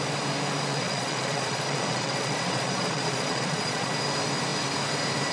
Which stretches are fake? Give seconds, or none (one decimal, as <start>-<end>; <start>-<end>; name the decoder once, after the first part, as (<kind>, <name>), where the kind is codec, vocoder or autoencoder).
0.7-3.9 (vocoder, Vocos)